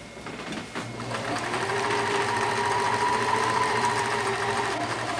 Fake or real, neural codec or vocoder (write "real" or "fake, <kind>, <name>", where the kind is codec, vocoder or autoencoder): real